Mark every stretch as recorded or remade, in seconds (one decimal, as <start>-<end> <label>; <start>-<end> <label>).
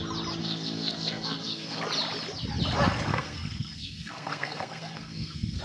0.0-0.4 recorded; 0.4-1.8 remade; 1.8-3.1 recorded; 3.1-5.6 remade